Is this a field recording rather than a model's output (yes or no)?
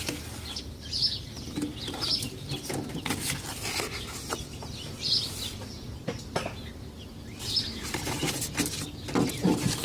yes